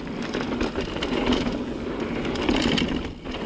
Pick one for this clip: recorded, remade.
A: recorded